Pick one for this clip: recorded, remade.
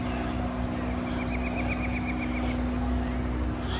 recorded